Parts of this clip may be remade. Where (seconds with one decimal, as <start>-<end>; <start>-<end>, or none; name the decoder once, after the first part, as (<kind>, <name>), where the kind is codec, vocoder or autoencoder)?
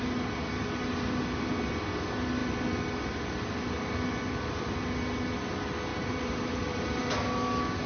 5.9-7.0 (vocoder, BigVGAN v2)